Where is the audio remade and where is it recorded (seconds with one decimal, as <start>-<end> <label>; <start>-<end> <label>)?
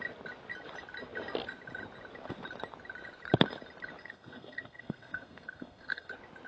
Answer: 0.0-4.0 recorded; 4.0-6.1 remade; 6.1-6.5 recorded